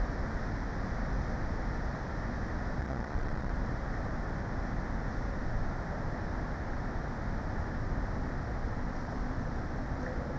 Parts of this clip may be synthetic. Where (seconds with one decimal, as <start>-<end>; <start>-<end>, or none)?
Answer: 2.8-3.5